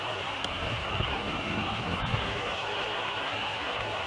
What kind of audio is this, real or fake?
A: fake